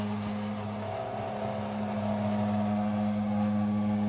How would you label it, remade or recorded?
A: recorded